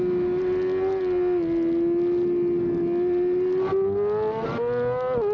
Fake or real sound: real